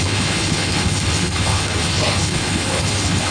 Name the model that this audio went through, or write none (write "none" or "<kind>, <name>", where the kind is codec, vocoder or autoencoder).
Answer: codec, HILCodec